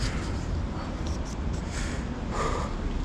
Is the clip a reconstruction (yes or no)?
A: no